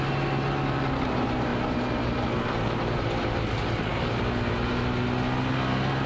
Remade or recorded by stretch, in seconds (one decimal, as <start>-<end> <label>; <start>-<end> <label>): 0.0-6.1 recorded